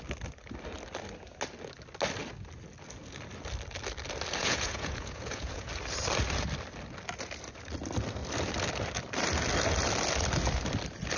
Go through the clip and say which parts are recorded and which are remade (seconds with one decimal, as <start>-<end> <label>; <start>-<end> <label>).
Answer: 0.0-4.4 recorded; 4.4-5.7 remade; 5.7-11.2 recorded